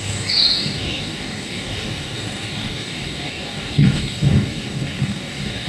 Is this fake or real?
fake